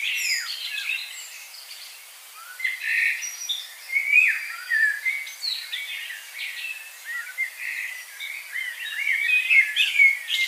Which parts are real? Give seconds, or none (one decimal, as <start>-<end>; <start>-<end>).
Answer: 0.0-10.5